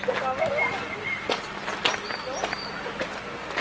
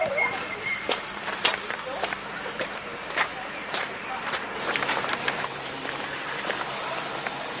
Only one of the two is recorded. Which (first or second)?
first